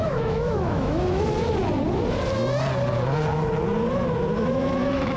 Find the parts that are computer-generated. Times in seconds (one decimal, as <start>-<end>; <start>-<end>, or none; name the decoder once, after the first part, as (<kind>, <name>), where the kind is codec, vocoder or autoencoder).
0.0-1.2 (autoencoder, DAC-VAE); 4.5-5.2